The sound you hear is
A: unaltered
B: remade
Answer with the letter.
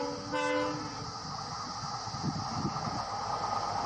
A